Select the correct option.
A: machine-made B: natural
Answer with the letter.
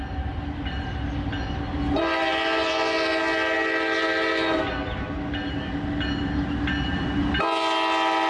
B